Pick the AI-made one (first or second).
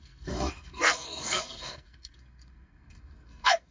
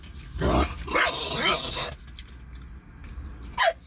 first